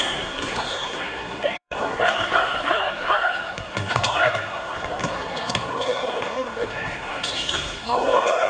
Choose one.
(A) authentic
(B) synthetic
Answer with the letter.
B